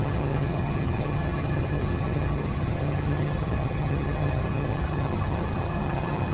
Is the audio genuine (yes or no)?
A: no